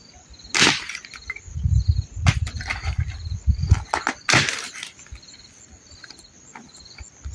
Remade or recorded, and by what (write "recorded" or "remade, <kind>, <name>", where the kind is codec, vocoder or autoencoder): recorded